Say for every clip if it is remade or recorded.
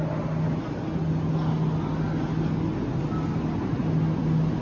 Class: recorded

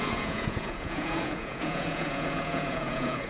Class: remade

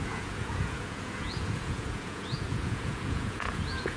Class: remade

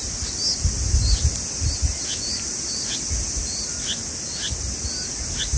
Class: recorded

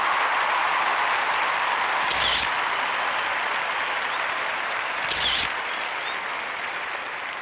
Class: remade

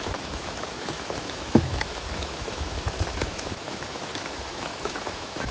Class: remade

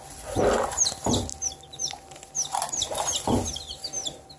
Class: recorded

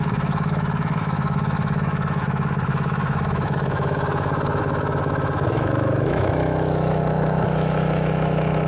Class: remade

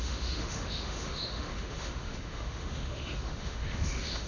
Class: remade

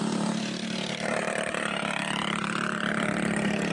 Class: remade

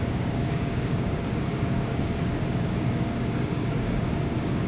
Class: remade